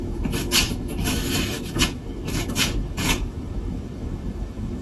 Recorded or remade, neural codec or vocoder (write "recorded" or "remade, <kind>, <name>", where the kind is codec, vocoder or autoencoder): remade, autoencoder, DAC-VAE